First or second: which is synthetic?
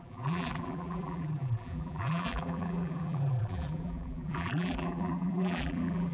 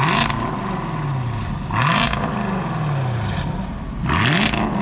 first